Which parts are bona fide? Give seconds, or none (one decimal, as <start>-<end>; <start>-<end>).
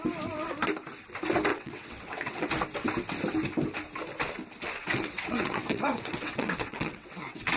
0.0-1.5; 2.5-4.8